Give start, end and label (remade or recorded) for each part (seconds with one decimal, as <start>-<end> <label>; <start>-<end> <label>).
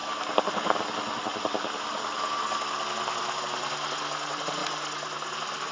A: 0.0-5.7 recorded